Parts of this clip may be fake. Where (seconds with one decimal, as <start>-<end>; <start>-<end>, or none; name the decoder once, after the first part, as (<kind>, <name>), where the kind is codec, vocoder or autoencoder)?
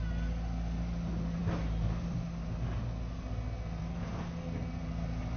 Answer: none